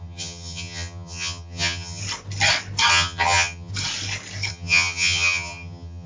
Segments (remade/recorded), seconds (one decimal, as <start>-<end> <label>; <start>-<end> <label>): 0.0-2.0 remade; 2.0-2.9 recorded; 2.9-3.7 remade; 3.7-4.5 recorded; 4.5-6.1 remade